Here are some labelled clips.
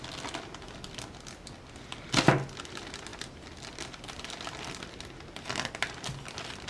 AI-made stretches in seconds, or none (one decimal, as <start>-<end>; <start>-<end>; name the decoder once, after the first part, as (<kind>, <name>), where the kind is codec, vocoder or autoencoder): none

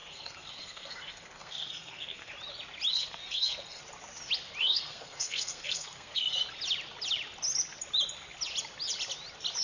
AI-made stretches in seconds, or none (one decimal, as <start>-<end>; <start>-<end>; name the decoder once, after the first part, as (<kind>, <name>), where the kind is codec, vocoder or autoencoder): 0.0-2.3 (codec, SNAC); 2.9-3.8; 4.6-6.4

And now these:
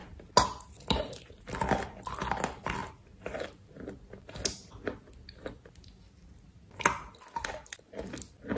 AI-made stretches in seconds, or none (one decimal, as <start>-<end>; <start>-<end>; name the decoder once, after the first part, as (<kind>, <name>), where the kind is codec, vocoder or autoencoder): none

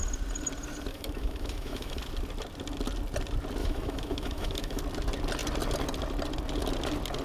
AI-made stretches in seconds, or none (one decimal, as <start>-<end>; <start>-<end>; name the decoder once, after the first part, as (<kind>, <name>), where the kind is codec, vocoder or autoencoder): 0.9-2.0 (autoencoder, DAC-VAE); 3.6-4.8

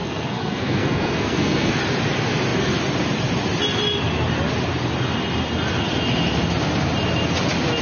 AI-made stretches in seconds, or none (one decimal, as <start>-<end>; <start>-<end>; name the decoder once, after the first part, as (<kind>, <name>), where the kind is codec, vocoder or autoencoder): 0.0-1.7 (codec, SNAC)

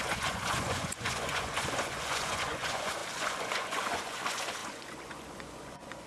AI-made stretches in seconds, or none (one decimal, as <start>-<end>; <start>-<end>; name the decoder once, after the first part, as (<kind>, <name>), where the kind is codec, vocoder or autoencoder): 0.0-6.1 (vocoder, Vocos)

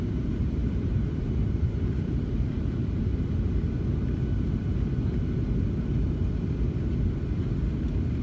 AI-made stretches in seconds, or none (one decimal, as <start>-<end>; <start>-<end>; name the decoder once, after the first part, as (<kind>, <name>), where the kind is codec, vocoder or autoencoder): 0.0-3.1 (vocoder, BigVGAN v2)

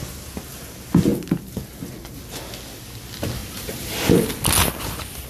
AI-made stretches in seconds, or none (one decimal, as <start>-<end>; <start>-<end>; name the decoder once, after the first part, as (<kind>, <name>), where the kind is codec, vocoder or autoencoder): 3.4-3.9 (vocoder, BigVGAN v2)